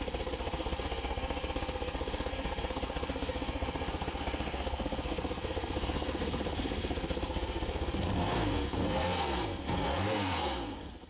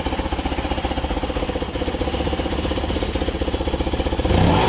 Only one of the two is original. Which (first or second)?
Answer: second